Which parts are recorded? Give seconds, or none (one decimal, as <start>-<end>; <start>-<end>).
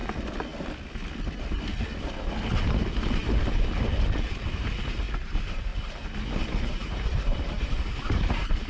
0.0-4.3